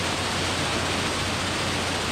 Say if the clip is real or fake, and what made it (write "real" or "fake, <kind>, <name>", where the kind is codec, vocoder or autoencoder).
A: real